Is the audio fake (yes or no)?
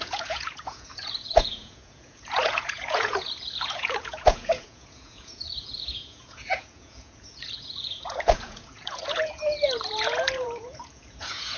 yes